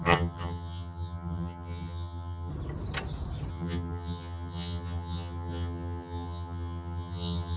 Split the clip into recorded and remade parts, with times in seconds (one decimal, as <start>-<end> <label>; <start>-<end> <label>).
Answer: 0.0-2.5 remade; 2.5-3.5 recorded; 3.5-7.6 remade